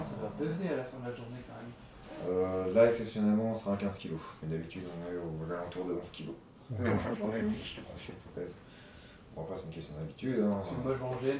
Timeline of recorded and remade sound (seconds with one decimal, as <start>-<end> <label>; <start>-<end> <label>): 0.0-6.9 recorded; 6.9-8.3 remade; 8.3-11.4 recorded